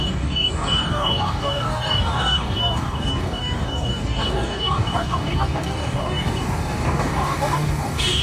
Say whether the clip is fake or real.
fake